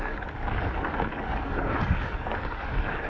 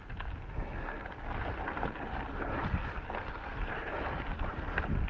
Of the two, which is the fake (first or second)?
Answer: first